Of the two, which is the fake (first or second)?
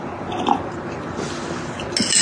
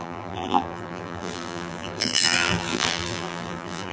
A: second